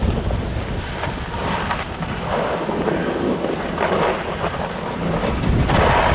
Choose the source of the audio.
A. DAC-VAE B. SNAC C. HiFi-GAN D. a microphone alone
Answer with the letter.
D